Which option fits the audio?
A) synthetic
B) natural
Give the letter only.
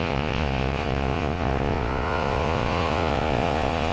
A